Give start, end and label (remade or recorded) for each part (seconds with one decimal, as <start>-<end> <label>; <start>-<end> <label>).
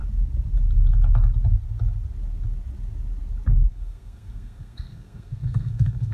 0.0-3.7 recorded; 3.7-6.1 remade